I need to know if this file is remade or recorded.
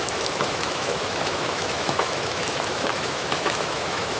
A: remade